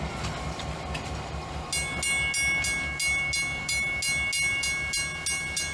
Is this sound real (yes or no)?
yes